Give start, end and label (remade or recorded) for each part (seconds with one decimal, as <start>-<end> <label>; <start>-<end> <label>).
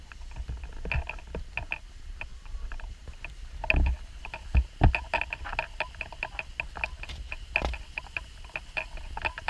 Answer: 0.0-2.3 recorded; 2.3-2.9 remade; 2.9-9.5 recorded